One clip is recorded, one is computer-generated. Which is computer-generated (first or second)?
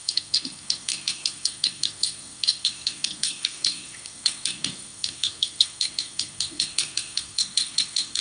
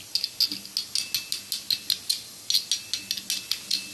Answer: first